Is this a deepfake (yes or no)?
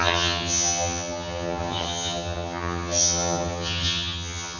yes